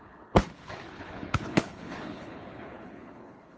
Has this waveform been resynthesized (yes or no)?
yes